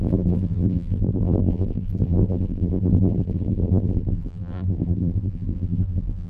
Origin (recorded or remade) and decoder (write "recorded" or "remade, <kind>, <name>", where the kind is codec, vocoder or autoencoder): remade, vocoder, BigVGAN v2